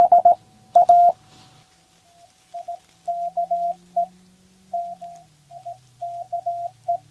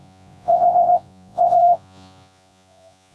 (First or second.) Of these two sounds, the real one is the first